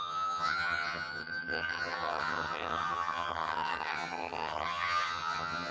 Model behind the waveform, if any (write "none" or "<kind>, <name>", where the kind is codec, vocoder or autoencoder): vocoder, HiFi-GAN